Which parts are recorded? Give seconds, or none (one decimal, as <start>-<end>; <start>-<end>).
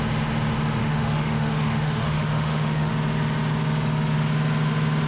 0.0-0.8; 2.9-5.1